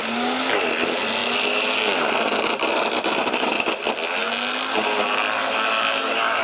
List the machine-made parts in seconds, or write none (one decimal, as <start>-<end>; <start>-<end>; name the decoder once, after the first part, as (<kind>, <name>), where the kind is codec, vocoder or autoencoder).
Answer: none